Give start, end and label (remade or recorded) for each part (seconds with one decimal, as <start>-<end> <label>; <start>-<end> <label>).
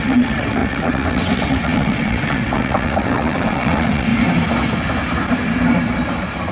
0.0-4.1 remade; 4.1-6.5 recorded